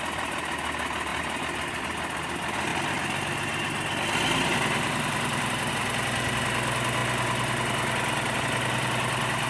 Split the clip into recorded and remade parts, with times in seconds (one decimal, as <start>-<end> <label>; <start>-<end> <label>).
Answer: 0.0-9.5 recorded